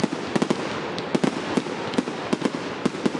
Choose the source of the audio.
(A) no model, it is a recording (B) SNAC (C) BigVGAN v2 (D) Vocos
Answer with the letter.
A